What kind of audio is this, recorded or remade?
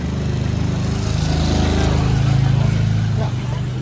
recorded